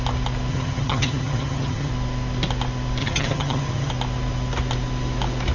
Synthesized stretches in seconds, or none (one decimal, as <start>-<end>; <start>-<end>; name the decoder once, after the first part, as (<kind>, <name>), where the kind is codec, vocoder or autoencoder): 0.5-1.9 (vocoder, HiFi-GAN); 3.0-3.9